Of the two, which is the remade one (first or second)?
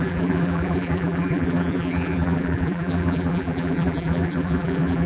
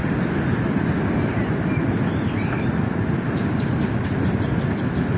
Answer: first